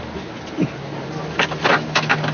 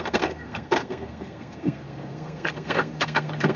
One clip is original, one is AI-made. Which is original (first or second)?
first